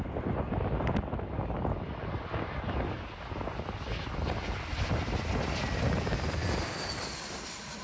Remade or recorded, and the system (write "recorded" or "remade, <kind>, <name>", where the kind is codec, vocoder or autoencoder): recorded